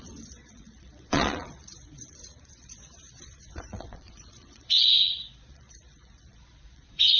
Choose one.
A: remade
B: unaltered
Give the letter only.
A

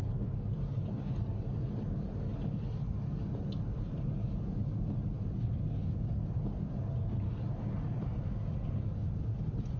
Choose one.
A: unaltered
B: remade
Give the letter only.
A